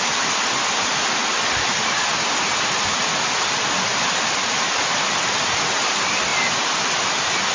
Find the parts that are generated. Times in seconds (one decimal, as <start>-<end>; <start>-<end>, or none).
1.2-2.0; 6.3-7.1